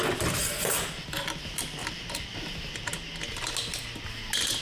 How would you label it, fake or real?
real